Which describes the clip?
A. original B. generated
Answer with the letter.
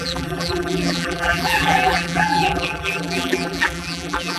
B